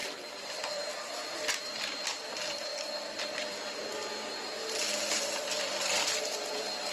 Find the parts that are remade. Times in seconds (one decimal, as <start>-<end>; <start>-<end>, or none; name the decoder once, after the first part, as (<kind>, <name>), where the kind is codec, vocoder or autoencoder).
2.7-3.8 (vocoder, BigVGAN v2)